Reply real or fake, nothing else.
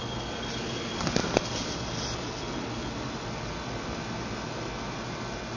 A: real